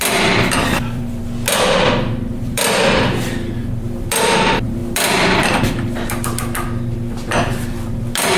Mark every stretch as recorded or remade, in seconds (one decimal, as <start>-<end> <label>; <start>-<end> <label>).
0.0-1.2 remade; 1.2-2.1 recorded; 2.1-8.4 remade